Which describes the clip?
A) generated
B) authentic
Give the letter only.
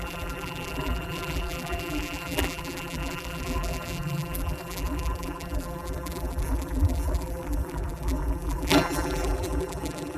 A